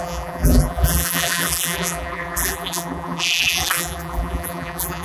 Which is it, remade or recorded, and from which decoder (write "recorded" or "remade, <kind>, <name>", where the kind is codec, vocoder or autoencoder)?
remade, vocoder, BigVGAN v2